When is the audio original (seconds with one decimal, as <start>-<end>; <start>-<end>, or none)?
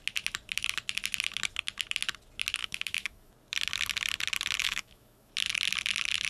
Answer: 0.0-2.6; 3.3-4.6; 5.3-6.3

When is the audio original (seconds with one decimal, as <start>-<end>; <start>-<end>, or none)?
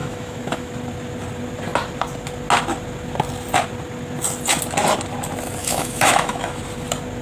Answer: 0.7-5.6; 6.6-7.2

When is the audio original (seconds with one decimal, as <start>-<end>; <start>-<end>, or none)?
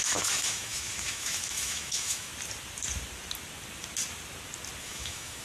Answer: 2.3-4.8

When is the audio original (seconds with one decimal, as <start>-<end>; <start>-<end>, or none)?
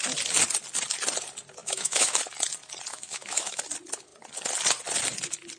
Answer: 0.0-1.6; 2.2-2.9; 3.6-5.6